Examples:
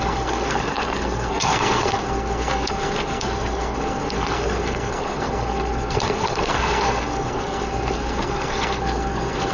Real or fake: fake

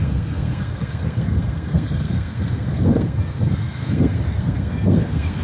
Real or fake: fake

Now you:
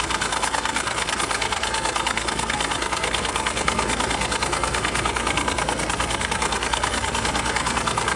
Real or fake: fake